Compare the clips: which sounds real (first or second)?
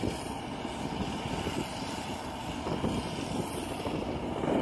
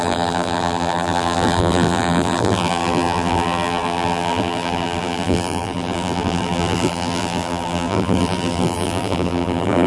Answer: first